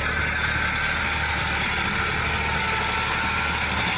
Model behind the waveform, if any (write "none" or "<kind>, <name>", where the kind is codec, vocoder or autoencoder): none